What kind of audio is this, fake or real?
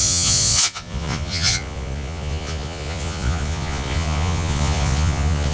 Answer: fake